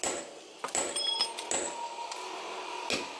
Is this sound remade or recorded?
recorded